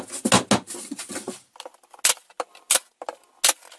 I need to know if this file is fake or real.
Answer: real